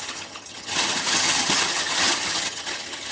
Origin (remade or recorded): remade